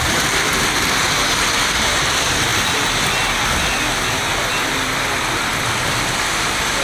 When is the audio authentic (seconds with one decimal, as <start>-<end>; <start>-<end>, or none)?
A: 0.0-6.8

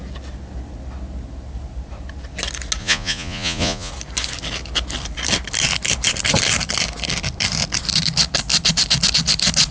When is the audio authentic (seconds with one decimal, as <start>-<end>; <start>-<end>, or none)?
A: 0.0-2.8; 3.9-9.7

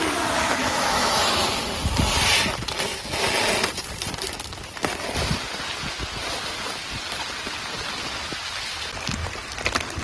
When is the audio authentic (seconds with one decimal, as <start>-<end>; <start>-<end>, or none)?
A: 0.0-0.6; 1.7-10.0

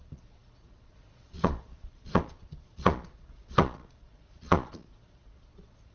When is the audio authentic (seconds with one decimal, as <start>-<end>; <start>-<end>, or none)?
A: none